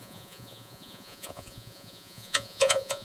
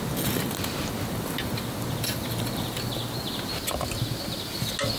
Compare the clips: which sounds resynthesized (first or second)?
first